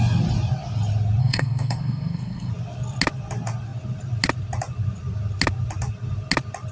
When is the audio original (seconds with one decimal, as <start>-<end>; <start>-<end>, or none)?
0.0-1.2; 2.5-6.7